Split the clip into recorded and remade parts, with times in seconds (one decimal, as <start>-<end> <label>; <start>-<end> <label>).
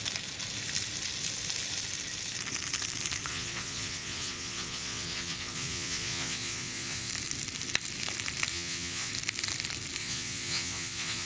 0.0-3.3 recorded; 3.3-7.1 remade; 7.1-8.5 recorded; 8.5-9.1 remade; 9.1-10.0 recorded; 10.0-11.3 remade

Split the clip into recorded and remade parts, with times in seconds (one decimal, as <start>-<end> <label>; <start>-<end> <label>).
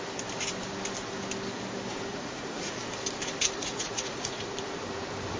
0.0-2.1 recorded; 2.1-2.8 remade; 2.8-3.6 recorded; 3.6-4.5 remade; 4.5-5.4 recorded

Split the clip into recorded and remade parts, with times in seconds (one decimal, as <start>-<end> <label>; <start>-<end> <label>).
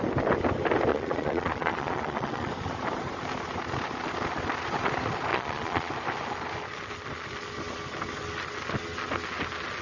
0.0-0.9 recorded; 0.9-2.5 remade; 2.5-5.3 recorded; 5.3-5.9 remade; 5.9-9.8 recorded